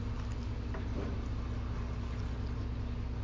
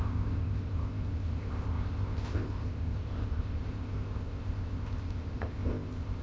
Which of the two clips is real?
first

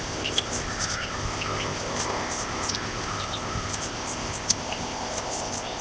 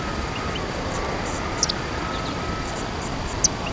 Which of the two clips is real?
second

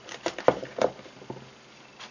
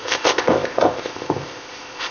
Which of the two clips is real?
first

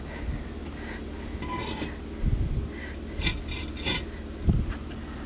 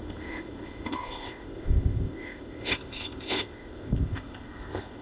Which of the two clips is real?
first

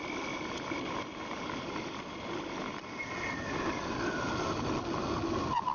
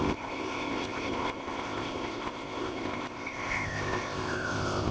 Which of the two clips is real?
first